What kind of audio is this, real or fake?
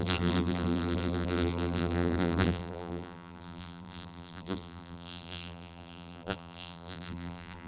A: fake